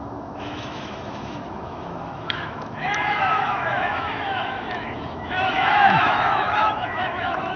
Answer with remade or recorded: remade